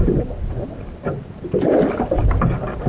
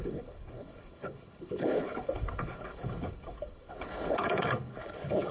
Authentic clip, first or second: first